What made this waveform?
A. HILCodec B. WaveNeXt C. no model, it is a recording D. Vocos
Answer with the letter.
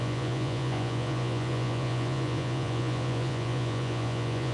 D